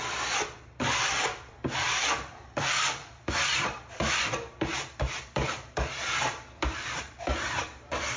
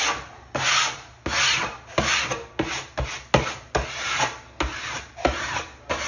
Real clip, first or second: second